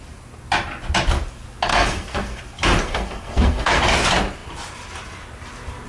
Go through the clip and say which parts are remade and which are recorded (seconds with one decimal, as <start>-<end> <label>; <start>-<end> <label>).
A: 0.0-1.7 recorded; 1.7-2.4 remade; 2.4-2.8 recorded; 2.8-3.8 remade; 3.8-5.9 recorded